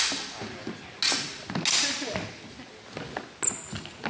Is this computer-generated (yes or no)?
no